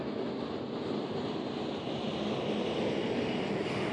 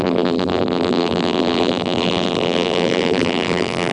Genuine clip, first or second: first